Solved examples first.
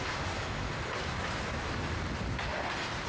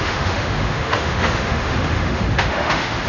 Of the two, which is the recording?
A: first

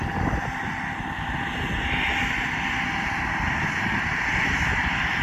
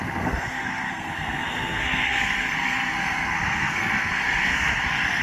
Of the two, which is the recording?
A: first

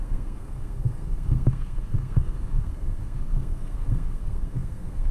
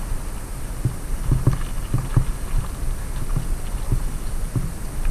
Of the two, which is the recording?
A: second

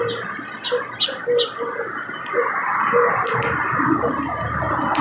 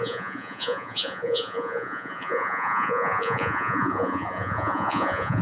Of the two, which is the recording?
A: first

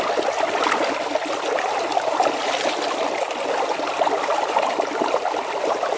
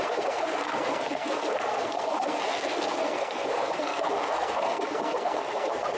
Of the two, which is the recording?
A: first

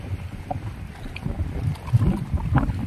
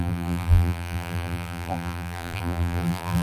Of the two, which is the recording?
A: first